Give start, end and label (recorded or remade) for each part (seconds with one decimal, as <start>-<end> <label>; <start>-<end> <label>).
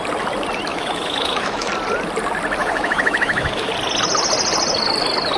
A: 0.0-0.7 recorded; 0.7-1.7 remade; 1.7-2.6 recorded; 2.6-3.7 remade; 3.7-5.4 recorded